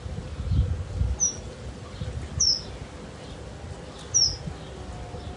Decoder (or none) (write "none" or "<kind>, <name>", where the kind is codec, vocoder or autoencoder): none